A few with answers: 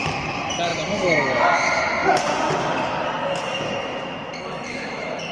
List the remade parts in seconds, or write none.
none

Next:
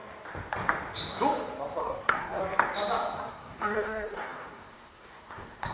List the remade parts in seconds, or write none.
1.8-2.4 (codec, SNAC); 3.3-5.7

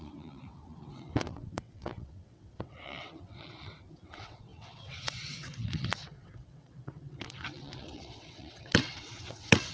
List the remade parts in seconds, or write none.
0.0-9.7 (vocoder, WaveNeXt)

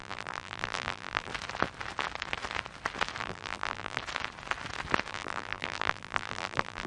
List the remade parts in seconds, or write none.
0.0-1.3 (vocoder, BigVGAN v2); 3.2-4.0; 5.1-6.9

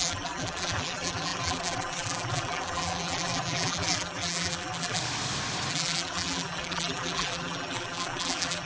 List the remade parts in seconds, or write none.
0.0-5.0 (vocoder, BigVGAN v2); 5.7-8.7

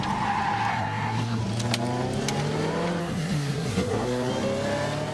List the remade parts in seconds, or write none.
0.7-1.4 (codec, SNAC); 3.0-4.3

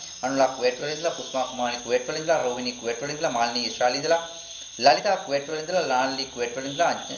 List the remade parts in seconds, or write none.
0.8-1.8 (codec, DAC)

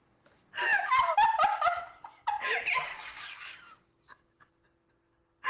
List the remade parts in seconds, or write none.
2.9-4.5 (codec, DAC)